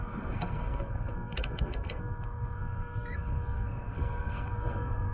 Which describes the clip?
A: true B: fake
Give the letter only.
B